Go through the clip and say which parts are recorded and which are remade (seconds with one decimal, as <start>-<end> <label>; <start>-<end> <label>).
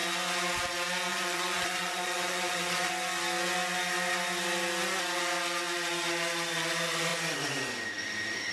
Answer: 0.0-1.1 recorded; 1.1-2.9 remade; 2.9-8.5 recorded